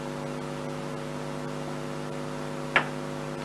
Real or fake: real